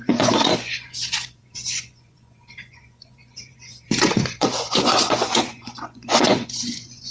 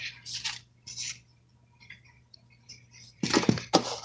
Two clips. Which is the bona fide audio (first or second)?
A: second